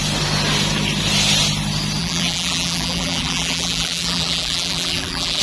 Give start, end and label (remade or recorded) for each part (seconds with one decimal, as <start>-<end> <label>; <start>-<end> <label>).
0.0-2.0 recorded; 2.0-5.4 remade